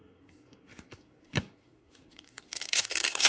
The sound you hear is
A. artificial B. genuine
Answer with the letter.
A